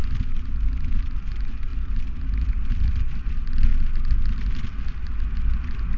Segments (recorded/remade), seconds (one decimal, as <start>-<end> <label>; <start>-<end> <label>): 0.0-6.0 recorded